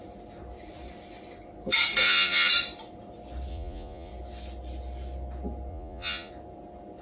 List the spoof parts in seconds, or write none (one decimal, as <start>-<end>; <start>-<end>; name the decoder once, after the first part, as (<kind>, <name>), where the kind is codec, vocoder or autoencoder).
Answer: 2.0-2.5 (vocoder, Vocos); 3.5-4.1; 5.7-6.3